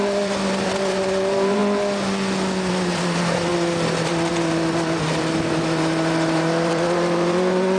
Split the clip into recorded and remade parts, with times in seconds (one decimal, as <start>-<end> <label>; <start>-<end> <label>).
0.0-1.6 remade; 1.6-2.7 recorded; 2.7-3.5 remade; 3.5-4.3 recorded; 4.3-7.8 remade